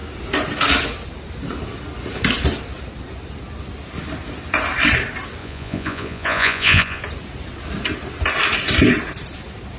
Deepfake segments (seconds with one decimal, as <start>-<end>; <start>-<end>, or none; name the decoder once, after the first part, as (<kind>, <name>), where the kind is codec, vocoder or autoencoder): 5.4-7.0 (vocoder, Vocos)